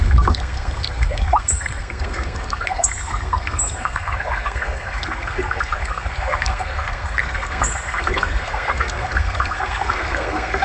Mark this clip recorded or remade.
remade